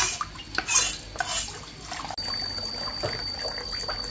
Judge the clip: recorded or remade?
recorded